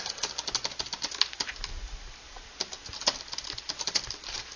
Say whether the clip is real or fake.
real